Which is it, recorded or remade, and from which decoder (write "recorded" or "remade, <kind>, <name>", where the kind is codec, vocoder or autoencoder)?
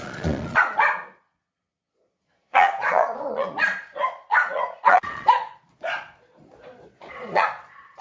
remade, vocoder, Vocos